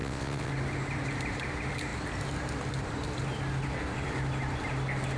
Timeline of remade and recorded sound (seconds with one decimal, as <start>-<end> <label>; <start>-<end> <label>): 0.0-0.5 remade; 0.5-5.2 recorded